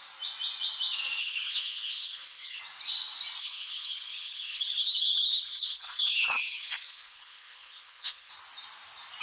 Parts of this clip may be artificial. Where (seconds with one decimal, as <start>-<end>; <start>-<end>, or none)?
1.2-2.6; 3.4-8.3